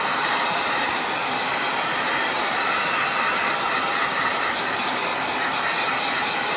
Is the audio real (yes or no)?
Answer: no